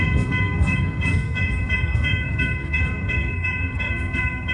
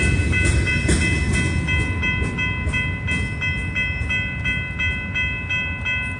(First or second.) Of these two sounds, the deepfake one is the first